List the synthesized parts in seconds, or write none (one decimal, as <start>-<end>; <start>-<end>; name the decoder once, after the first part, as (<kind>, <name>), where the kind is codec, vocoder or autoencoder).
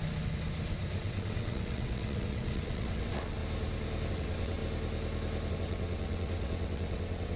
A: 1.0-3.4 (vocoder, WaveNeXt); 4.1-4.6; 5.5-7.4